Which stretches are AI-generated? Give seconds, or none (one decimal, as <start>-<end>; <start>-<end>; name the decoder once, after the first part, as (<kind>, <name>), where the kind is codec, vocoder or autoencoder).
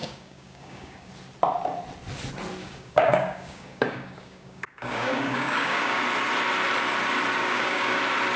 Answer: 0.0-1.1 (codec, DAC); 2.6-6.0; 7.4-8.0